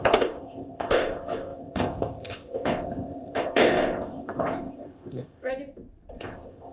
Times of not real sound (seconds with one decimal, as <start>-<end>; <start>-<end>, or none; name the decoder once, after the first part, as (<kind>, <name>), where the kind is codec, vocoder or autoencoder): 0.0-5.5 (codec, ZipCodec); 6.2-6.7